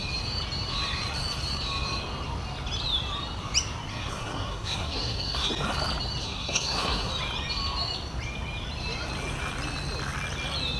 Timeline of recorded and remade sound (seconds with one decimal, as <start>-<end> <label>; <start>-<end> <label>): 0.0-3.9 recorded; 3.9-5.5 remade; 5.5-6.2 recorded; 6.2-7.1 remade; 7.1-10.8 recorded